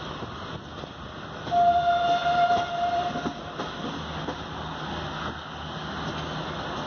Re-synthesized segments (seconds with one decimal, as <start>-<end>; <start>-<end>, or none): none